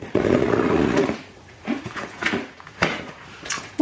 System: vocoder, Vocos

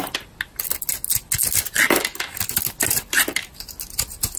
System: none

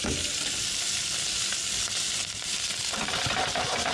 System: none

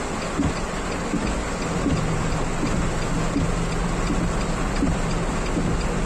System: none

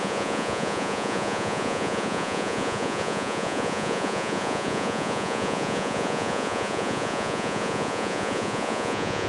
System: vocoder, Vocos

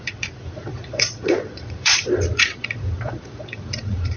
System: vocoder, Vocos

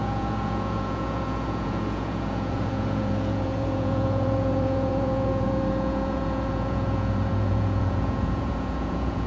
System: vocoder, Vocos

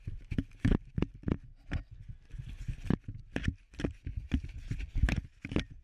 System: none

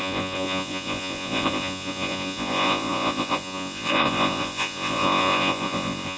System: vocoder, Vocos